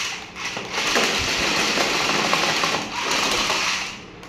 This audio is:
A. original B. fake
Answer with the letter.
A